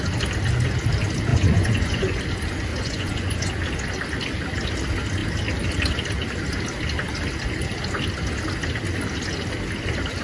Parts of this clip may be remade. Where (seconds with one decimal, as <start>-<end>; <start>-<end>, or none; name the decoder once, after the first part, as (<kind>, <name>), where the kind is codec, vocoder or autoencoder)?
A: 1.3-2.2 (vocoder, Vocos); 2.7-3.5